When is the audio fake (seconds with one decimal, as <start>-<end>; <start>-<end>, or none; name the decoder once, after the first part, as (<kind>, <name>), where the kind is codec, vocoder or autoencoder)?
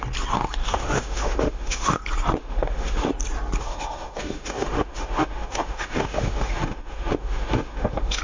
0.6-2.0 (autoencoder, DAC-VAE); 2.4-3.1; 3.6-8.2